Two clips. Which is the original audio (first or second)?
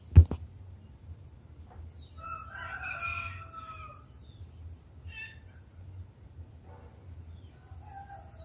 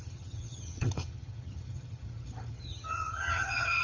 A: first